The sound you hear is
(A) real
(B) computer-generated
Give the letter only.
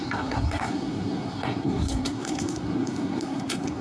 B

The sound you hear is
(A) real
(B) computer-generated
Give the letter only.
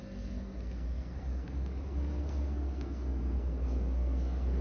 B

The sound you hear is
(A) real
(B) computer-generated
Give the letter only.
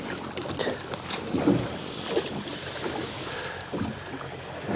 A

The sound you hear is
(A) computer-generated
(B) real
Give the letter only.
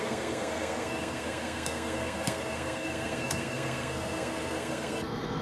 A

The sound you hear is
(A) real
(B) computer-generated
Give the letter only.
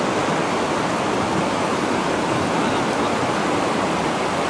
A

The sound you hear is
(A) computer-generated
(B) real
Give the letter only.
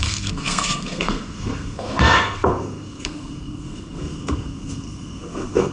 A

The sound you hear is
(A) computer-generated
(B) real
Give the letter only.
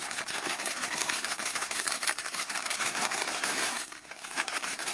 A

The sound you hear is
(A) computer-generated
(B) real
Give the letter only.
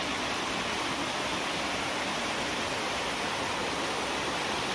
B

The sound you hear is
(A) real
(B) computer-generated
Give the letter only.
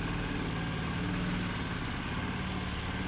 A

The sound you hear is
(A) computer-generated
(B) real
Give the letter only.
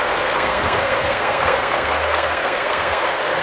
A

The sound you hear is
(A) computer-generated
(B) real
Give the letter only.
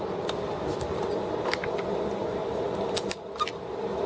B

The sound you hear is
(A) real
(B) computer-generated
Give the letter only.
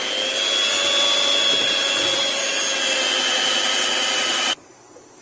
A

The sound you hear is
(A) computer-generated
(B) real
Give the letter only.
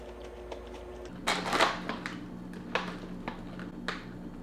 B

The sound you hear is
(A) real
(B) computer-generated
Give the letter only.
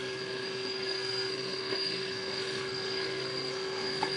B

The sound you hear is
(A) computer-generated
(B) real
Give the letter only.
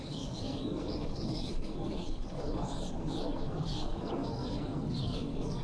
A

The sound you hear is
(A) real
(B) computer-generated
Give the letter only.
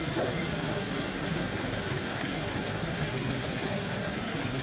B